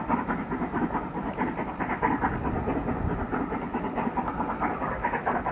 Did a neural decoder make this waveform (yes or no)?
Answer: no